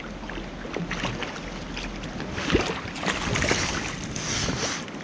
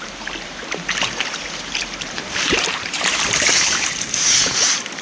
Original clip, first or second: first